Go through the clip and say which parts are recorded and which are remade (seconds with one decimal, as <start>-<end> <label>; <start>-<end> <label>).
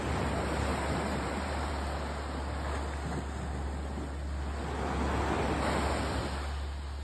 0.0-0.7 recorded; 0.7-1.7 remade; 1.7-7.0 recorded